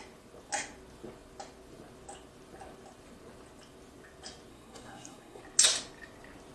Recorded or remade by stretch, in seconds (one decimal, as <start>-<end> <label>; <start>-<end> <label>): 0.0-4.5 recorded; 4.5-5.4 remade; 5.4-6.5 recorded